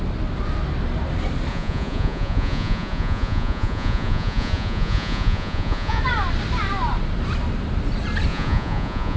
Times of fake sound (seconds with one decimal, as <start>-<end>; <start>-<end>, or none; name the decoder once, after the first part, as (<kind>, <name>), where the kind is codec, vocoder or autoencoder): 1.5-6.0 (vocoder, Vocos); 8.3-9.2

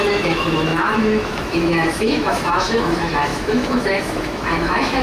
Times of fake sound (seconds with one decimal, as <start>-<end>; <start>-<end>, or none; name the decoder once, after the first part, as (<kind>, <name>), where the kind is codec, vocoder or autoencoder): 0.0-5.0 (autoencoder, DAC-VAE)

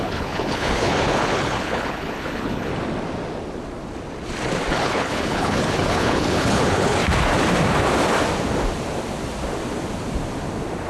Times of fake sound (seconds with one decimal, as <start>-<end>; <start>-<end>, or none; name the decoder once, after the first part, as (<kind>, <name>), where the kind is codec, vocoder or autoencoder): 0.0-2.7 (codec, HILCodec); 4.7-7.0

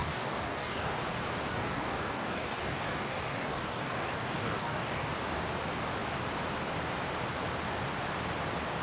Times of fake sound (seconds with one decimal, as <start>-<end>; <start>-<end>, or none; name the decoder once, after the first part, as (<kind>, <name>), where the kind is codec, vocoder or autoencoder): 0.0-0.9 (codec, DAC); 1.5-5.1

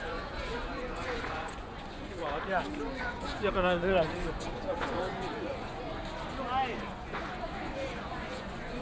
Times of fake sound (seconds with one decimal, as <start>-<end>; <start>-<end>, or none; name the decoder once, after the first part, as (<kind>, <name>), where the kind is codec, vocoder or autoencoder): 0.0-2.2 (vocoder, Vocos); 3.1-6.0; 6.7-8.8

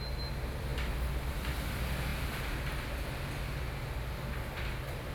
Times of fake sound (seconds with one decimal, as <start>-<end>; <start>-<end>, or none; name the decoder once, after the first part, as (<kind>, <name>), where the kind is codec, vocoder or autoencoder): none

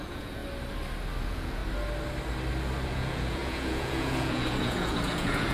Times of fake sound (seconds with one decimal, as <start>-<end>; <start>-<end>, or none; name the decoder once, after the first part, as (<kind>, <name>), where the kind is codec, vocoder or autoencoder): 0.0-0.4 (vocoder, Vocos); 1.2-1.6; 2.9-5.5

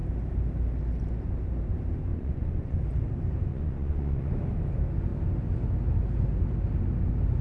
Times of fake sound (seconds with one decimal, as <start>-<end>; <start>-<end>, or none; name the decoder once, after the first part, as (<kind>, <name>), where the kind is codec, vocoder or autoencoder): 2.1-2.8 (vocoder, Vocos); 3.5-4.3